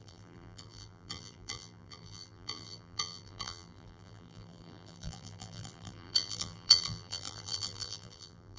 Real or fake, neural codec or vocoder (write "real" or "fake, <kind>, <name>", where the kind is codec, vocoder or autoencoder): fake, vocoder, BigVGAN v2